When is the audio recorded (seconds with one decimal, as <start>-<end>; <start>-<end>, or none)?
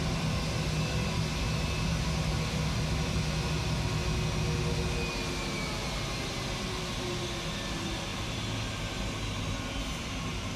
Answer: 0.0-10.6